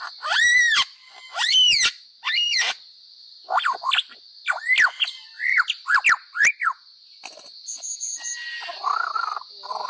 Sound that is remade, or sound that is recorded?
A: recorded